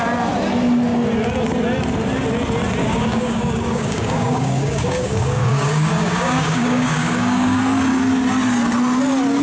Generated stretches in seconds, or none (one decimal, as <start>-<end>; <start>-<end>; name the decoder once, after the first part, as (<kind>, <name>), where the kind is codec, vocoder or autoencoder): 2.8-7.6 (codec, DAC)

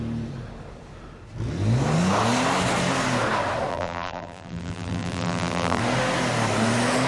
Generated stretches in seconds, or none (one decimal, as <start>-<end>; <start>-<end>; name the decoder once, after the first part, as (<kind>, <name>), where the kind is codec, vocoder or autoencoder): 3.7-5.8 (vocoder, BigVGAN v2)

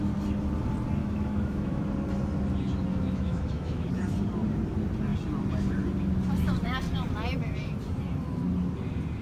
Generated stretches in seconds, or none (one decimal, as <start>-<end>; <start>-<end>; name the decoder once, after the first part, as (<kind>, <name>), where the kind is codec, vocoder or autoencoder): 1.0-1.8 (autoencoder, DAC-VAE); 2.9-3.9

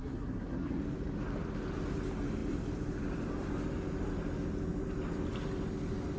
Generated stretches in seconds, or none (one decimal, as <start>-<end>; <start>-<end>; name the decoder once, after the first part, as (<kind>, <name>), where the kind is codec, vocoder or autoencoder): 0.0-0.8 (codec, SNAC)

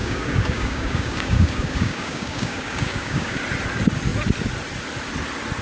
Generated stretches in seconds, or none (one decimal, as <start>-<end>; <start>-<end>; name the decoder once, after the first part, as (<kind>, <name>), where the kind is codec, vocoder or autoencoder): 0.0-3.4 (codec, DAC)

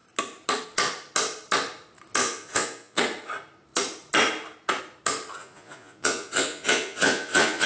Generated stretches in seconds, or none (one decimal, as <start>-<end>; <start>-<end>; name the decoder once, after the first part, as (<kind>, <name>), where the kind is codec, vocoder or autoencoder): 2.2-3.0 (vocoder, Vocos); 5.4-7.7

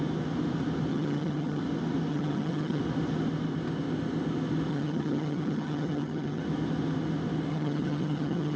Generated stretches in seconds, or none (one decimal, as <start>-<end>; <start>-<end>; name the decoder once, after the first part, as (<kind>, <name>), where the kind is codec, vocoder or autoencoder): 0.9-1.6 (vocoder, HiFi-GAN); 2.1-2.8; 4.7-6.4; 7.5-8.6

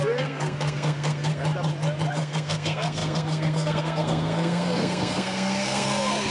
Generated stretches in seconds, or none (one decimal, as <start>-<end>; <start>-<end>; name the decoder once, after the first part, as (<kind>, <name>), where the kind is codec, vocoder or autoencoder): 0.0-1.4 (codec, SNAC); 2.1-6.3